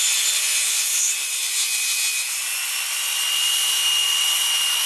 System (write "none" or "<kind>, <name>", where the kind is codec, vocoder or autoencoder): none